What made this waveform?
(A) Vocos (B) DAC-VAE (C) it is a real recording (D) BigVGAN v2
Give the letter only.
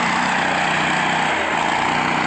C